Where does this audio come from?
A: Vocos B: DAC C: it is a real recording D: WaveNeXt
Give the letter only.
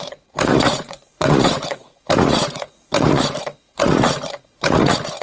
A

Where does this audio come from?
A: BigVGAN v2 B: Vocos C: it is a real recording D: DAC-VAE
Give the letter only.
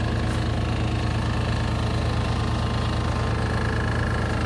C